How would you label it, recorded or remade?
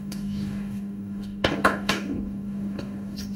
remade